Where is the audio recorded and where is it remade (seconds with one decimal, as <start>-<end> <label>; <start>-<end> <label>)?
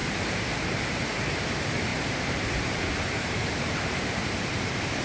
0.0-1.3 remade; 1.3-1.9 recorded; 1.9-3.8 remade; 3.8-4.2 recorded; 4.2-5.0 remade